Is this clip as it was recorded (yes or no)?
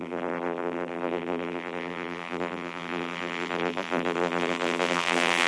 no